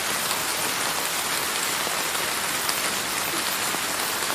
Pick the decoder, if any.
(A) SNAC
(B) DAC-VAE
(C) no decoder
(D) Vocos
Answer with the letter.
C